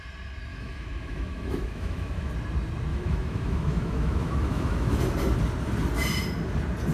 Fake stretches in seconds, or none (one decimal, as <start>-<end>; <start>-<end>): 0.5-2.3; 2.9-5.0